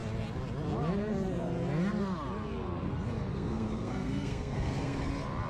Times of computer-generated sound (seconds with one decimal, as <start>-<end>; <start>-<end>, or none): 3.3-5.1